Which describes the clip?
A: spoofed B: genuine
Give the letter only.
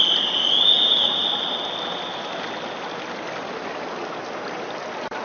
B